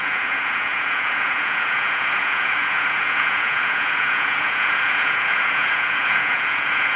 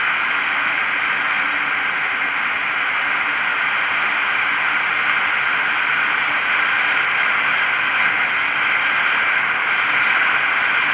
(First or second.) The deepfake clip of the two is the first